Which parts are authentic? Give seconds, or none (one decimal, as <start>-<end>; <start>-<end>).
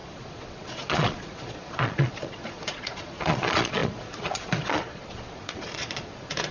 none